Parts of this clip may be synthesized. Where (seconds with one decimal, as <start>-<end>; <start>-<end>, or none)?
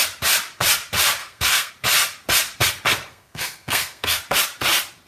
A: 1.2-1.7; 3.1-4.2